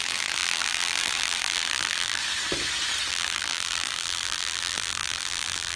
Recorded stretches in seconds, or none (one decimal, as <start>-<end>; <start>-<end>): 2.2-3.1